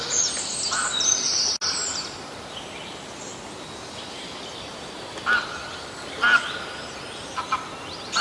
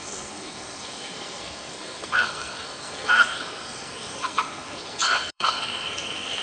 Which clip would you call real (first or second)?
first